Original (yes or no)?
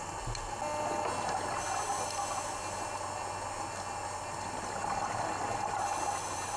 yes